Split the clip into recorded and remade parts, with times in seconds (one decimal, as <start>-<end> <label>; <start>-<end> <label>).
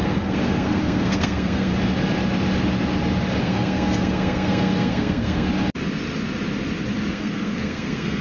0.0-1.7 remade; 1.7-3.4 recorded; 3.4-5.5 remade; 5.5-7.1 recorded; 7.1-8.2 remade